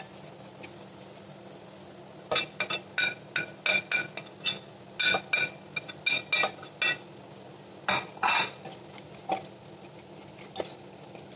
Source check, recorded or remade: recorded